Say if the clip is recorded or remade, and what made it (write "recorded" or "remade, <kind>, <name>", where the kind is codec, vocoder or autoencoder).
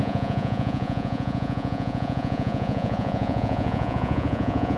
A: remade, vocoder, Vocos